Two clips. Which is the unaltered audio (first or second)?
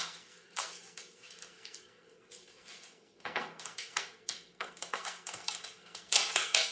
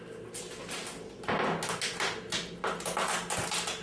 second